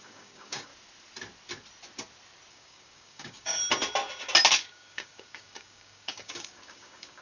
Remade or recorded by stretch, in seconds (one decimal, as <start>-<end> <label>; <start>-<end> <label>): 0.0-0.7 remade; 0.7-2.5 recorded; 2.5-3.6 remade; 3.6-4.7 recorded; 4.7-7.2 remade